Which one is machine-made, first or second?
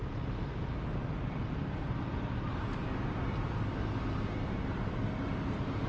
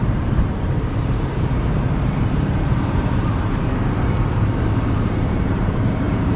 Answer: second